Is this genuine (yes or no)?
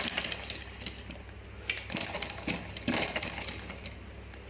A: yes